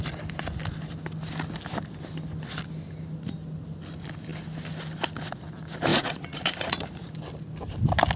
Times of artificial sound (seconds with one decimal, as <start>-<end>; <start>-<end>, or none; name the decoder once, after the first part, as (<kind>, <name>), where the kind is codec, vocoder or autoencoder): 5.9-7.1 (vocoder, Vocos)